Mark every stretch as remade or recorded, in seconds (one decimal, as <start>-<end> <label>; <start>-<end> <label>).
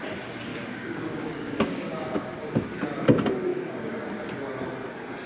0.0-0.5 recorded; 0.5-2.3 remade; 2.3-3.5 recorded; 3.5-4.1 remade; 4.1-5.3 recorded